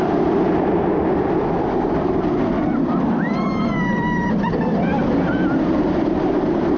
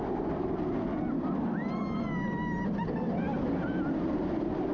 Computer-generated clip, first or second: first